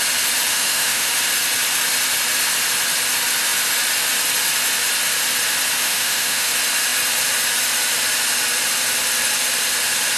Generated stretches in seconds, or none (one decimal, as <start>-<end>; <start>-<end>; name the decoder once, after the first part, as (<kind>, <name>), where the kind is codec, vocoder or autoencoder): 0.5-1.1 (autoencoder, DAC-VAE); 5.8-6.5